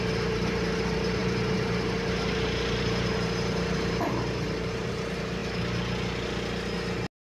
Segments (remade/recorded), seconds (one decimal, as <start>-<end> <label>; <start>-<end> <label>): 0.0-5.4 remade; 5.4-7.2 recorded